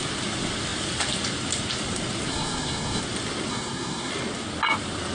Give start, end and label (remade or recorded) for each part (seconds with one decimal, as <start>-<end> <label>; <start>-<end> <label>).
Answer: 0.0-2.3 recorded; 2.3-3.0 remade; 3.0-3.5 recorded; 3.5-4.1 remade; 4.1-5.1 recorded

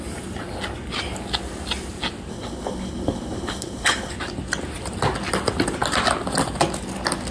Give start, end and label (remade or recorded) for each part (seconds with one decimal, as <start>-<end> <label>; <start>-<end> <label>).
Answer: 0.0-2.3 recorded; 2.3-4.1 remade; 4.1-7.3 recorded

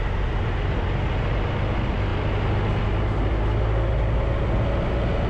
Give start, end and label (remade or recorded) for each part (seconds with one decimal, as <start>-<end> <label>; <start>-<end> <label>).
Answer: 0.0-5.3 recorded

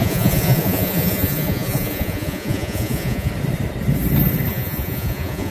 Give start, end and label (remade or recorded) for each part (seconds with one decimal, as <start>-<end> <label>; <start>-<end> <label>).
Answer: 0.0-3.3 remade; 3.3-4.5 recorded; 4.5-5.5 remade

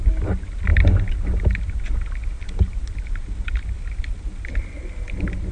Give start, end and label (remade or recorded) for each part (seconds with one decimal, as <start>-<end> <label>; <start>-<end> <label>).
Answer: 0.0-5.5 recorded

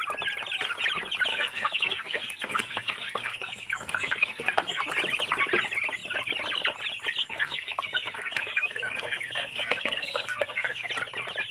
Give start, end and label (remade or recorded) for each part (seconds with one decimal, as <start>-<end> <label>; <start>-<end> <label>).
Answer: 0.0-1.3 recorded; 1.3-4.8 remade; 4.8-7.2 recorded; 7.2-10.9 remade; 10.9-11.5 recorded